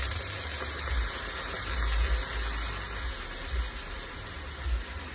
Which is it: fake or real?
real